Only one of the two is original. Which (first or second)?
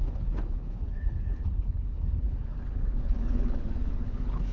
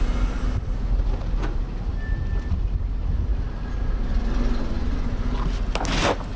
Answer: second